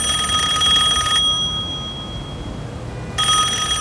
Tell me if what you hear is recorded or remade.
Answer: recorded